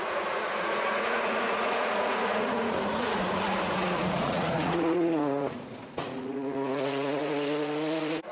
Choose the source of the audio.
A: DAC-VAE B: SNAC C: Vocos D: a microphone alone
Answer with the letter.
C